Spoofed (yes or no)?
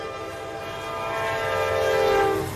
no